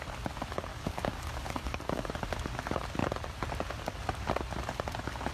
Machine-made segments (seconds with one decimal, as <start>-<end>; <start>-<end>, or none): 0.7-2.1